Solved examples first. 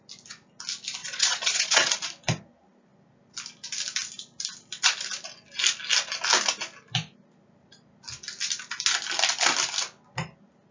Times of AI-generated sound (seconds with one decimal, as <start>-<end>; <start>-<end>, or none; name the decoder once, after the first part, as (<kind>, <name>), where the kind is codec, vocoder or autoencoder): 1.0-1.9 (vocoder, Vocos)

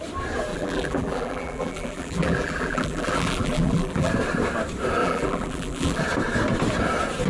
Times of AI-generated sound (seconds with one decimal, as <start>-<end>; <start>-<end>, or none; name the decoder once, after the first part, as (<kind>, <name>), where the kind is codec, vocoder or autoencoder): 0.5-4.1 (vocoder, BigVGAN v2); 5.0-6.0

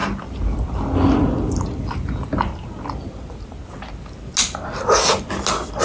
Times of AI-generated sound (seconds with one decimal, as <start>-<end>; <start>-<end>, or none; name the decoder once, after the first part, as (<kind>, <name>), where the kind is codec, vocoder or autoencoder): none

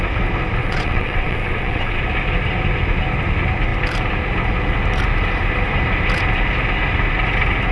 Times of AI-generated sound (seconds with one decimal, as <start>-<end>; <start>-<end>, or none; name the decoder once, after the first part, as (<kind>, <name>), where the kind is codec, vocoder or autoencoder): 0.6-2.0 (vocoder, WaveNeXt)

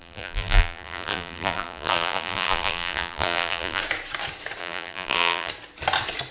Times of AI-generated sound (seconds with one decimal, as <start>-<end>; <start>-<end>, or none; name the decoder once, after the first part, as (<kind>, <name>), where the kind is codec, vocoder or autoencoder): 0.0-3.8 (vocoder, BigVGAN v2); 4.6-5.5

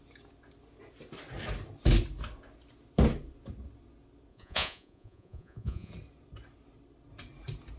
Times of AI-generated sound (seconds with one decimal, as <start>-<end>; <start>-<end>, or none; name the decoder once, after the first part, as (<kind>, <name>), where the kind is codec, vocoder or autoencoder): 4.3-5.9 (vocoder, Vocos)

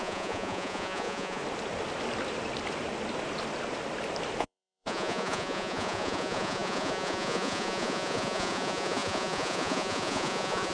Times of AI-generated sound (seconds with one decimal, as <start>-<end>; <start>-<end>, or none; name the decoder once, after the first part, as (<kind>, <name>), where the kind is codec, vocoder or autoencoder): 0.0-1.4 (vocoder, Vocos); 4.4-10.7

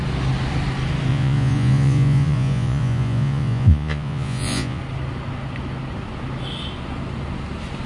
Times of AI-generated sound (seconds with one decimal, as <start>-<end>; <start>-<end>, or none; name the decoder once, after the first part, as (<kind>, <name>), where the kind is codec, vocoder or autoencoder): 1.1-4.8 (vocoder, Vocos)